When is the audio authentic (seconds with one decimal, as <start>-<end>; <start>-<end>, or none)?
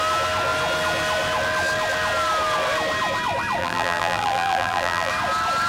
0.0-3.6; 5.1-5.7